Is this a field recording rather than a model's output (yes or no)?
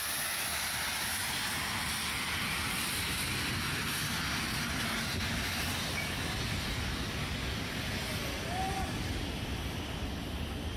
yes